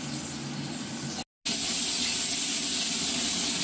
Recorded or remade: recorded